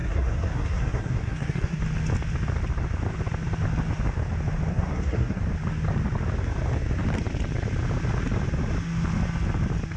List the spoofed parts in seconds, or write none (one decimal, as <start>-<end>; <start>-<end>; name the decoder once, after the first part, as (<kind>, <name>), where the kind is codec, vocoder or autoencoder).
0.0-1.8 (codec, SNAC); 4.7-5.4